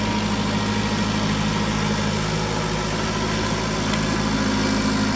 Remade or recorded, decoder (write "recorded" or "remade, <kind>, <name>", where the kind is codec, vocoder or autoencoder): recorded